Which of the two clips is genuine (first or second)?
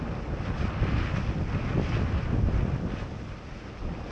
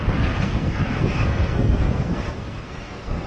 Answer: first